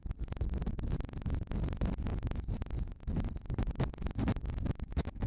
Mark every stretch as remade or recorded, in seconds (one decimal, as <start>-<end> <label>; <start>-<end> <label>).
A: 0.0-4.4 recorded; 4.4-5.3 remade